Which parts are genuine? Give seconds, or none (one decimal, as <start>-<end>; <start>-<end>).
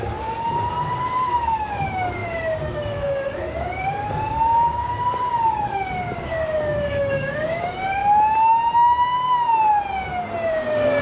8.0-10.5